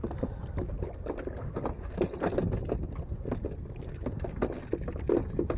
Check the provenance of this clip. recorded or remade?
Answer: recorded